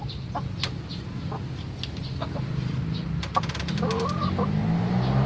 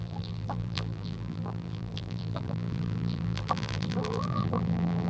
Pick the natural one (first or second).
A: first